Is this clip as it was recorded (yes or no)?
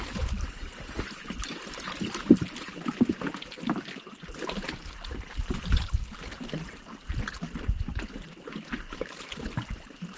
yes